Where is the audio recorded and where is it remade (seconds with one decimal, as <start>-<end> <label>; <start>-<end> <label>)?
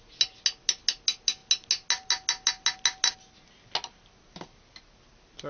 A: 0.0-5.5 recorded